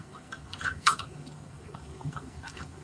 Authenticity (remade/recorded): remade